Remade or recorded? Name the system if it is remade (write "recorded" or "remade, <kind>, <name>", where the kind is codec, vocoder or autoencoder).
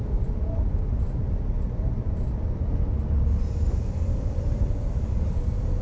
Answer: recorded